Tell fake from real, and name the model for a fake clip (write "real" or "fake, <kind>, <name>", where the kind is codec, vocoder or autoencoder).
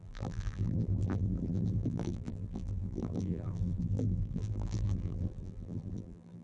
fake, vocoder, BigVGAN v2